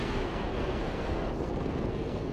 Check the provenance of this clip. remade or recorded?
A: remade